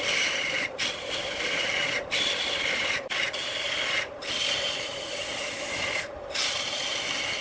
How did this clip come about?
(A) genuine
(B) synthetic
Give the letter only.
B